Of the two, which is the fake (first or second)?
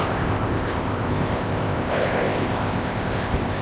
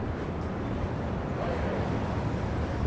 first